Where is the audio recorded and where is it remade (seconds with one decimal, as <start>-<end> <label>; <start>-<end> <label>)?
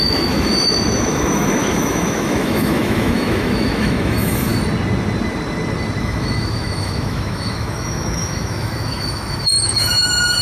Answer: 0.0-4.5 remade; 4.5-6.0 recorded; 6.0-10.4 remade